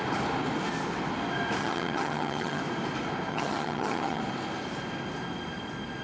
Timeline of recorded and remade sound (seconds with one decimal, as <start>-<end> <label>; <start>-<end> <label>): 0.0-1.6 recorded; 1.6-2.6 remade; 2.6-3.3 recorded; 3.3-4.2 remade; 4.2-6.0 recorded